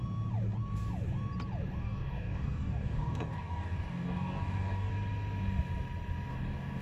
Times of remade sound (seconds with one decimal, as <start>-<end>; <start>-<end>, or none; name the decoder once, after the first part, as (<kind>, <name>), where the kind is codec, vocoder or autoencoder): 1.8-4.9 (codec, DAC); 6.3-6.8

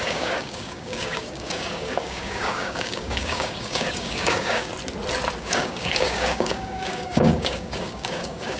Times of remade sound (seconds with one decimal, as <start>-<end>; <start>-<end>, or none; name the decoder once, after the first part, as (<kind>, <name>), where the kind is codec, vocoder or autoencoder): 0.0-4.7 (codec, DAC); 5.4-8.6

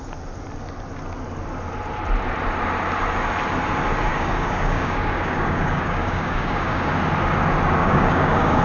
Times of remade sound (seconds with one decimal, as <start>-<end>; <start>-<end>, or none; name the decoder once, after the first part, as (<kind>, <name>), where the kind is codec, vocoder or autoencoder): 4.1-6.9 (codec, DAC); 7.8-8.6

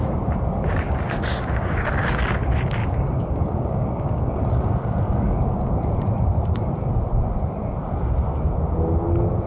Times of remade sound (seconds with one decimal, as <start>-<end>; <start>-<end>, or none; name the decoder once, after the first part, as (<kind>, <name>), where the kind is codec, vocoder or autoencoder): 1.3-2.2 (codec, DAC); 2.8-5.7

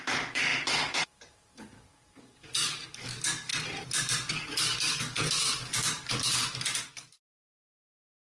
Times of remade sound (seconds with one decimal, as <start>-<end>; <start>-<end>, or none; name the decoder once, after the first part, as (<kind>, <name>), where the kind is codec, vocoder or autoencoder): 0.0-3.5 (codec, DAC); 4.3-6.4; 6.9-8.3

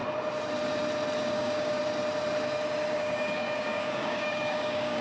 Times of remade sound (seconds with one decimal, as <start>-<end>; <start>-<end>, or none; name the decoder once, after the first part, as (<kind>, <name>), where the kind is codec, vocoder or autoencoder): 1.3-1.8 (codec, DAC); 2.9-5.0

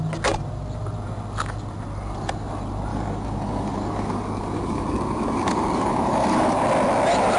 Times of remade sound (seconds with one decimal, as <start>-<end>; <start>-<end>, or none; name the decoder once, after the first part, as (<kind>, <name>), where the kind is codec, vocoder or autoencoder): 2.9-6.6 (codec, DAC)